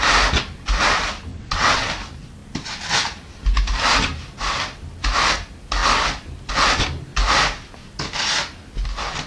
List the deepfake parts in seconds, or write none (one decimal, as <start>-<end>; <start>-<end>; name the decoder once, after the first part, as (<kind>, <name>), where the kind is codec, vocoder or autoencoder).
1.3-1.9 (vocoder, WaveNeXt)